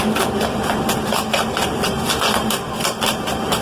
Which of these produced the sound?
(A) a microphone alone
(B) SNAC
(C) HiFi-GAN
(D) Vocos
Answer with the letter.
A